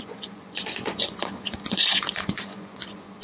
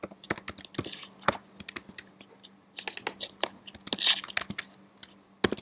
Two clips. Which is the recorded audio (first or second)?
second